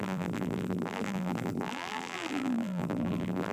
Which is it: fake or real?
fake